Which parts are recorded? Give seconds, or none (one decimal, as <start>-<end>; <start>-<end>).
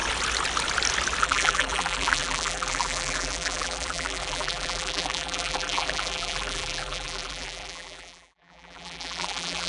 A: 0.0-1.2